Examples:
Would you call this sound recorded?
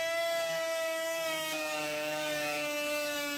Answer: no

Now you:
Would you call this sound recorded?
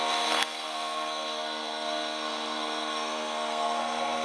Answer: no